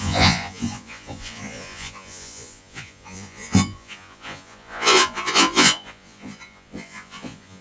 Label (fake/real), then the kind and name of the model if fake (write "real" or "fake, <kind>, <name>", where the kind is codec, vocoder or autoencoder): fake, vocoder, Vocos